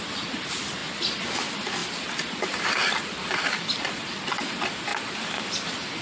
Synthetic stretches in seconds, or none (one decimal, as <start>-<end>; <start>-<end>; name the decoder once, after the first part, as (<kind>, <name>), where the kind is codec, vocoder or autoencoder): 0.0-0.8 (vocoder, BigVGAN v2); 1.3-1.8; 2.4-6.0